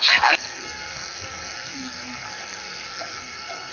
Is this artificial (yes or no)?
yes